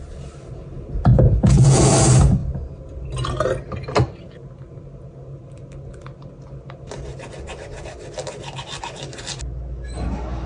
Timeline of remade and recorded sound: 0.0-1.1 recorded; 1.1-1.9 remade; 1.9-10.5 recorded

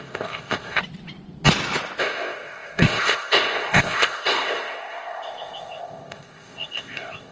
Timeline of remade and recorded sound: 0.0-0.8 remade; 0.8-2.0 recorded; 2.0-7.3 remade

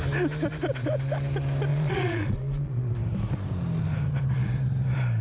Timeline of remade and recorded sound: 0.0-1.7 recorded; 1.7-2.9 remade; 2.9-5.2 recorded